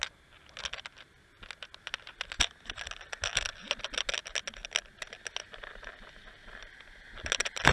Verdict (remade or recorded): recorded